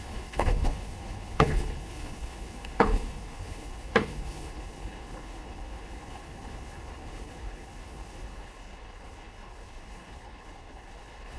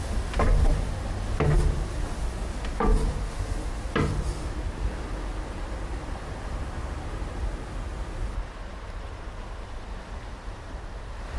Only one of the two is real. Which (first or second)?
second